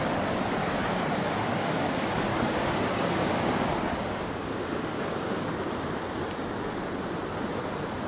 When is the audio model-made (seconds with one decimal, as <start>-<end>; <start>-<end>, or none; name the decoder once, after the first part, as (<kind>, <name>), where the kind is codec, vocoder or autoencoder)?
0.6-1.9 (codec, DAC); 2.3-5.4